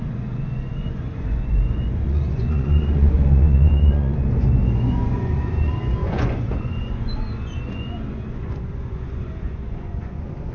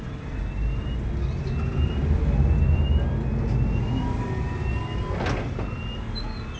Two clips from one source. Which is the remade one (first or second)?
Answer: first